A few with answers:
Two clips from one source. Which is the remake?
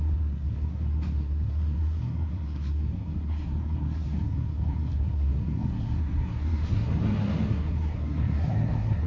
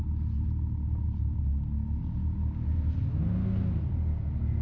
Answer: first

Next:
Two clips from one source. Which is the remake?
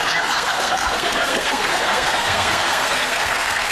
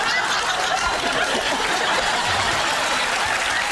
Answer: first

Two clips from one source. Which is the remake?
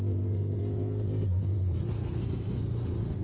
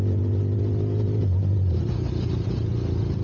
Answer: first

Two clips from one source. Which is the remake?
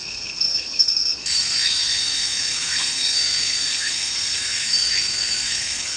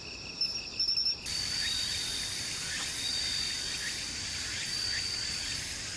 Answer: first